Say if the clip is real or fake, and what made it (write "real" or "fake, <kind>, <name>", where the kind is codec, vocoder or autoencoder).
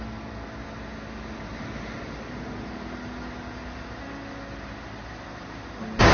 real